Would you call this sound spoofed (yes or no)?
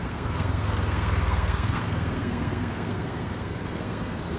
yes